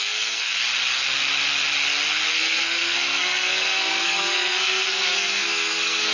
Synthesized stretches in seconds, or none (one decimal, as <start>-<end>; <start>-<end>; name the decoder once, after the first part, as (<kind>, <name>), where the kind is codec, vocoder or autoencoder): 0.0-0.6 (codec, SNAC); 2.3-6.1